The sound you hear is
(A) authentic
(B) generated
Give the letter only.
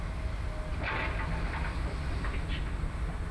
A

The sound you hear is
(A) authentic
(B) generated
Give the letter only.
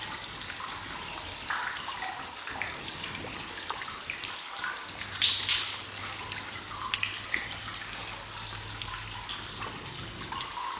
A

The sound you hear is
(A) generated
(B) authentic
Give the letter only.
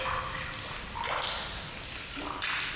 B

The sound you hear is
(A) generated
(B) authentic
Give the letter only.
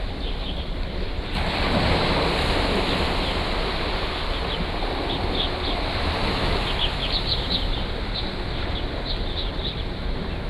B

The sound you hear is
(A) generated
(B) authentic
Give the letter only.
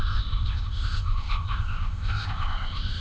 A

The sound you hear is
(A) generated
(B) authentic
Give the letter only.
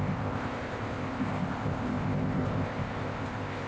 A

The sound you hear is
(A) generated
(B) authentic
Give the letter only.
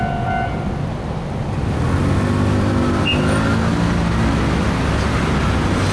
B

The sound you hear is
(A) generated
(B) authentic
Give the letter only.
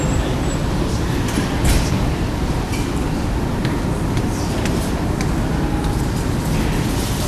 B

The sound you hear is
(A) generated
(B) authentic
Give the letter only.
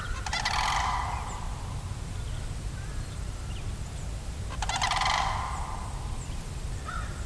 B